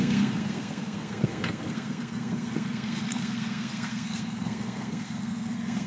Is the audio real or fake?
fake